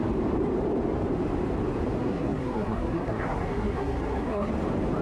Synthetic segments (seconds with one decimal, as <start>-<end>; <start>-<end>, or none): 2.0-4.5